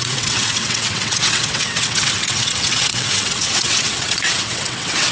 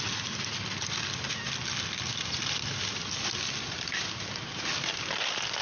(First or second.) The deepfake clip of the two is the first